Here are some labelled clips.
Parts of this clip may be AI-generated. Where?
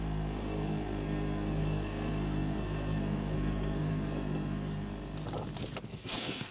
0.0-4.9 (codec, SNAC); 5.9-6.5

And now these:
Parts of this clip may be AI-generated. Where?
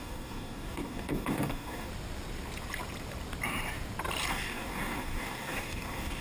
0.0-1.9 (codec, DAC); 4.3-6.2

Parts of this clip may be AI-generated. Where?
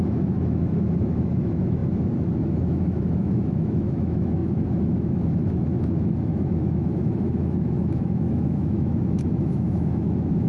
0.0-10.5 (autoencoder, DAC-VAE)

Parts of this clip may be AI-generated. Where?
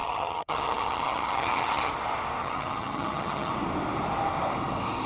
0.0-1.9 (vocoder, HiFi-GAN); 2.4-3.5